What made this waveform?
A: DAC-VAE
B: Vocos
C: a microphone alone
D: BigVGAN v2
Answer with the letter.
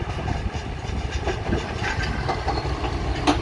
C